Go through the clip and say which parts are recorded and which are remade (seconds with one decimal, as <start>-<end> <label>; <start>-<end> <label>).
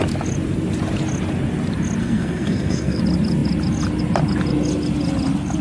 0.0-2.0 recorded; 2.0-3.0 remade; 3.0-5.6 recorded